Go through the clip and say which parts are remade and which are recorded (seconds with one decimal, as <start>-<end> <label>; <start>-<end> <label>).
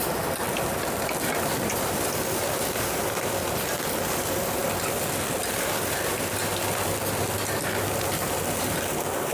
0.0-4.6 remade; 4.6-5.4 recorded; 5.4-6.1 remade; 6.1-7.6 recorded; 7.6-9.3 remade